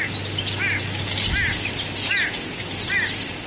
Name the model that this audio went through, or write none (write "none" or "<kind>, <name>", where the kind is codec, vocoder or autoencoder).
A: none